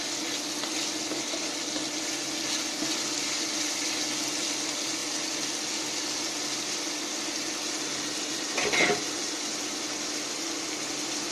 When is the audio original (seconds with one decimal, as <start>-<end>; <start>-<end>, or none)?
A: 0.0-11.3